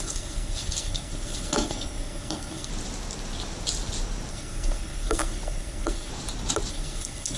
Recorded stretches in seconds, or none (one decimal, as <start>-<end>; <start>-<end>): 2.7-4.3; 6.1-6.7